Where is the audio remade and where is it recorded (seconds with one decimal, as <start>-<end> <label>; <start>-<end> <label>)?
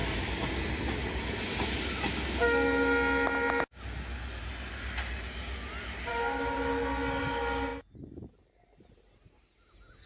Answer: 0.0-10.1 recorded